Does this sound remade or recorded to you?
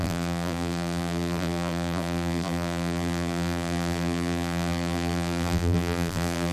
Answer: remade